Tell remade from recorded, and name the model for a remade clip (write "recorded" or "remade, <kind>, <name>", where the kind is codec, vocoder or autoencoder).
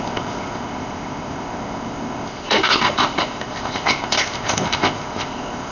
remade, codec, ZipCodec